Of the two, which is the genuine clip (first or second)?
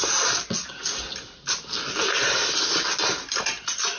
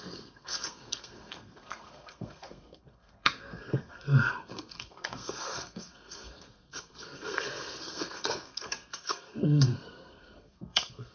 first